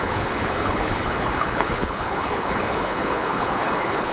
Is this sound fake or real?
fake